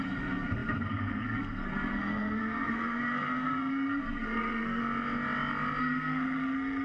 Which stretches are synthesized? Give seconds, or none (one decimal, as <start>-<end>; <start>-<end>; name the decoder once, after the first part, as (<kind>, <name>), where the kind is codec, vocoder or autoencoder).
0.0-4.8 (codec, SNAC); 5.8-6.8